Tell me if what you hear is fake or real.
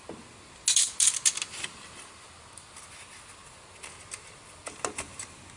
real